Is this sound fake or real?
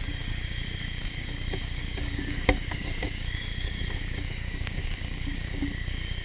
fake